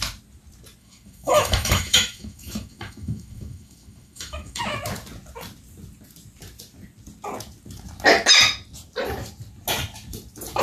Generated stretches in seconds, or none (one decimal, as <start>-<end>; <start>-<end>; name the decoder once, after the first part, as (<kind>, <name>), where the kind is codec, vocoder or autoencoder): 0.8-4.6 (autoencoder, DAC-VAE)